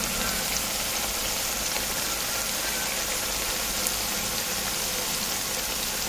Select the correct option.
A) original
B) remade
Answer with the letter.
A